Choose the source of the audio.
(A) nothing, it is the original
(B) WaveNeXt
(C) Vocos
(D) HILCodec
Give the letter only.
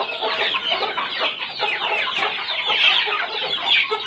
A